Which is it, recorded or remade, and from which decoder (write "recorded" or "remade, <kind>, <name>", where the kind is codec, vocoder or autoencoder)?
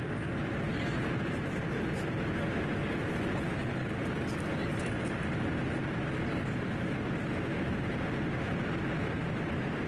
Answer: recorded